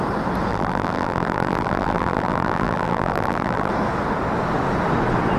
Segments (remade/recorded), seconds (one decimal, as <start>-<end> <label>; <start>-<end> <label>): 0.0-0.5 recorded; 0.5-3.7 remade; 3.7-5.4 recorded